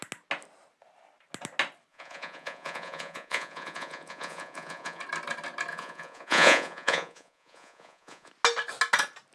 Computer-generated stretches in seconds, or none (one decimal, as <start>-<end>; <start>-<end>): 1.9-5.0; 5.7-8.3